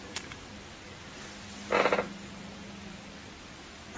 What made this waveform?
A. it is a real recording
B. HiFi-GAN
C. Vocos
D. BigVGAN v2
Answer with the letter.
A